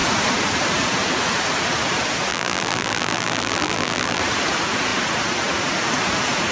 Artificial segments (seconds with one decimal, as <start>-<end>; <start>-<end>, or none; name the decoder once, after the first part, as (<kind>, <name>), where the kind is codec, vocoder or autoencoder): 2.3-4.2 (vocoder, BigVGAN v2)